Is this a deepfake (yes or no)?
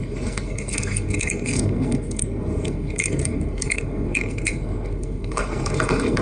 yes